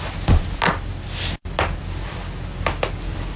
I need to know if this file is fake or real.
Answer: real